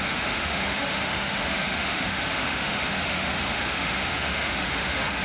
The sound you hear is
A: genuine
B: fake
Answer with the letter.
B